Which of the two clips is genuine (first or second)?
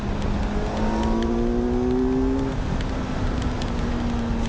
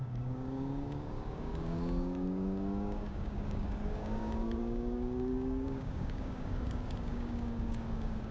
first